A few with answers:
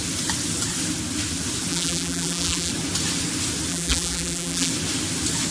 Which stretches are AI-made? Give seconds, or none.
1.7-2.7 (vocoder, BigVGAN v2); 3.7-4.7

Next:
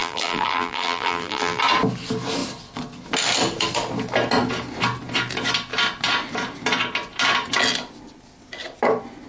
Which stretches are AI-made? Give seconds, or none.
0.0-1.6 (vocoder, BigVGAN v2)

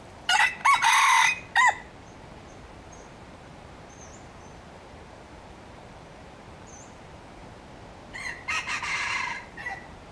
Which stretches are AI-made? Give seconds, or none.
0.0-0.6 (vocoder, BigVGAN v2); 2.2-7.4; 8.8-10.1